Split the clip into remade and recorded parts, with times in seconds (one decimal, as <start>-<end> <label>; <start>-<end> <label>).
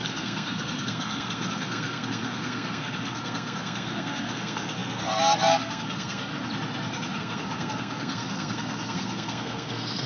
0.0-6.3 remade; 6.3-7.2 recorded; 7.2-10.1 remade